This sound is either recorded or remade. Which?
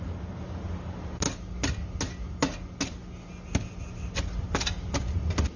recorded